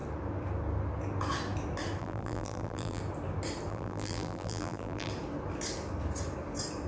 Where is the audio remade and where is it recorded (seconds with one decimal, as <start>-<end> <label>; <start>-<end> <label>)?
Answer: 0.0-2.0 recorded; 2.0-3.0 remade; 3.0-3.7 recorded; 3.7-5.1 remade; 5.1-6.9 recorded